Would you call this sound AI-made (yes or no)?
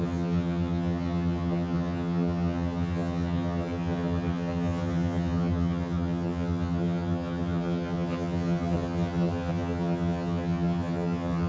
yes